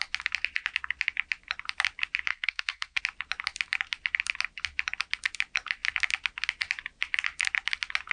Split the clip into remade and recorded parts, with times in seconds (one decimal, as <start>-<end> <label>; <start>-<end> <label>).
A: 0.0-2.3 recorded; 2.3-3.0 remade; 3.0-8.1 recorded

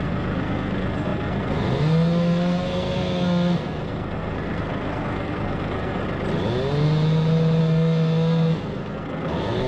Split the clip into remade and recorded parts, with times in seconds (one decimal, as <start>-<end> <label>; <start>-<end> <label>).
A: 0.0-6.0 remade; 6.0-7.6 recorded; 7.6-9.7 remade